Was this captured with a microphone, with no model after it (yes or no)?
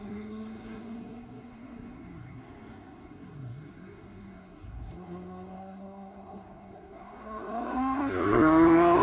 no